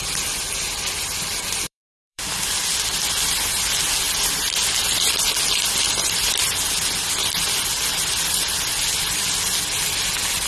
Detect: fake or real fake